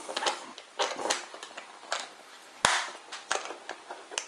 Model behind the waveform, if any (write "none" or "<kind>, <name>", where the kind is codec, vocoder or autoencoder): none